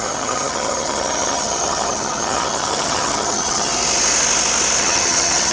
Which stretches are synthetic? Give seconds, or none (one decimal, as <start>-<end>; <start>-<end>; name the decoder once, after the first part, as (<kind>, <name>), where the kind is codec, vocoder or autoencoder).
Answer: 0.0-3.7 (vocoder, HiFi-GAN); 4.8-5.5

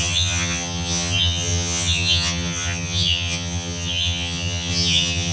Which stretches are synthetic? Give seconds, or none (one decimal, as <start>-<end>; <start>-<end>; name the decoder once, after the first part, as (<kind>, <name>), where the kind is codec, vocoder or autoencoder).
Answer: 0.0-5.3 (vocoder, HiFi-GAN)

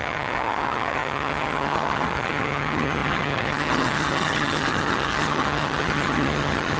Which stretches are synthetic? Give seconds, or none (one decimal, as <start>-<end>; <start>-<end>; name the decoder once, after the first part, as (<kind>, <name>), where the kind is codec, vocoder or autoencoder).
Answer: 0.0-6.8 (vocoder, HiFi-GAN)

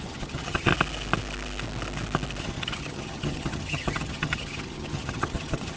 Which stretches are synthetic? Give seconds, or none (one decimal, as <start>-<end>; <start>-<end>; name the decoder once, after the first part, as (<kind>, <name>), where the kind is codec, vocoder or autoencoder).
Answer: 0.0-0.7 (vocoder, HiFi-GAN); 2.4-5.8

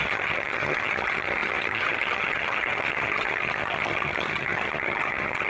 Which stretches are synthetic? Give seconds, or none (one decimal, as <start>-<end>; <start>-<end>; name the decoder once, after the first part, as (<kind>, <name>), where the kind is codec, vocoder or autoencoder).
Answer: 0.0-5.5 (vocoder, HiFi-GAN)

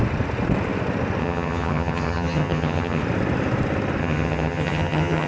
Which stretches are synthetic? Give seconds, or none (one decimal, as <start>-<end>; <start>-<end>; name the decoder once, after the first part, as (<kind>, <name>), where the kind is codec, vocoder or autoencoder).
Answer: 1.2-3.0 (vocoder, HiFi-GAN); 4.0-5.3